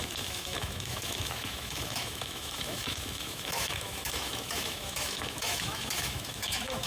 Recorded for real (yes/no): no